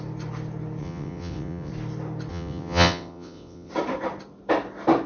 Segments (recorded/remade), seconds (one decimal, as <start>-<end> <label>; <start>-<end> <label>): 0.0-0.8 recorded; 0.8-1.7 remade; 1.7-2.3 recorded; 2.3-3.7 remade; 3.7-5.1 recorded